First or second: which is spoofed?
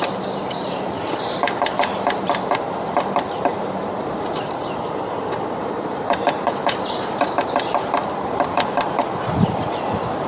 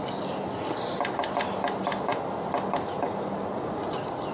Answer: first